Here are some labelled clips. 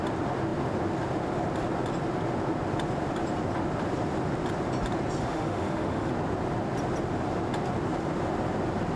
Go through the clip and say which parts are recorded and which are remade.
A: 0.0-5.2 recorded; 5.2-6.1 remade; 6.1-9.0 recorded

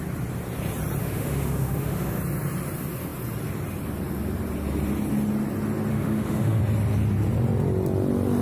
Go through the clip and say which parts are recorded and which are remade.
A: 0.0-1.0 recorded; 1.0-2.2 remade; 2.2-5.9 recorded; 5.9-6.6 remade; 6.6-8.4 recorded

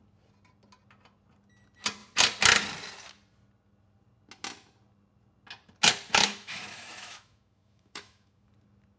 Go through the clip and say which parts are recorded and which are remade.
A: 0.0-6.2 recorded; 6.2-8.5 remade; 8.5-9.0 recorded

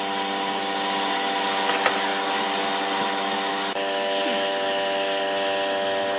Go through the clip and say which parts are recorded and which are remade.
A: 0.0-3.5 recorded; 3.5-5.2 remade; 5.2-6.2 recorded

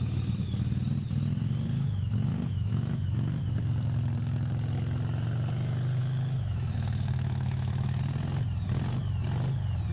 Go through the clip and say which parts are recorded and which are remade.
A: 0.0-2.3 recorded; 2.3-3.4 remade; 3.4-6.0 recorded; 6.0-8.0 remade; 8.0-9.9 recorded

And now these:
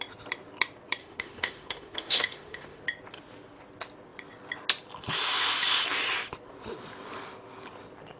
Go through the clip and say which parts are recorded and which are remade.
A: 0.0-1.0 recorded; 1.0-2.8 remade; 2.8-8.2 recorded